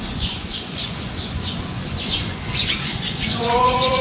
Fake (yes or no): yes